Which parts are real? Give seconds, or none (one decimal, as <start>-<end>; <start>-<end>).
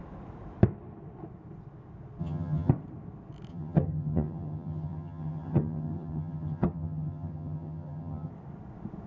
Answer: 0.0-2.2; 2.7-3.5; 8.3-9.1